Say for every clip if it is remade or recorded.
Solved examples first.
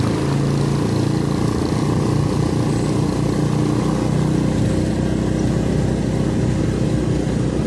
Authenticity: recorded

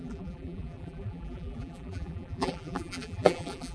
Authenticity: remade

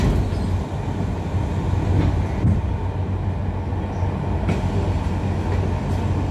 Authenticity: recorded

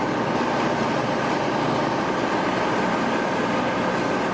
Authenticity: remade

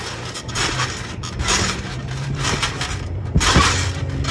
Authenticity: remade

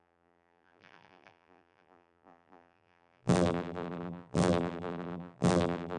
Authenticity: remade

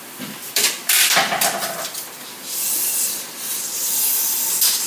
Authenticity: remade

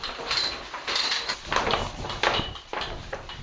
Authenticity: remade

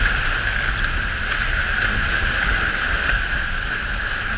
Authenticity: recorded